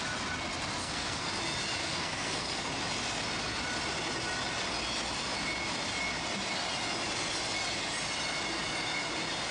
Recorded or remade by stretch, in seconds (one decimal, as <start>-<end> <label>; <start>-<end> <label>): 0.0-0.8 recorded; 0.8-1.3 remade; 1.3-1.8 recorded; 1.8-2.7 remade; 2.7-9.5 recorded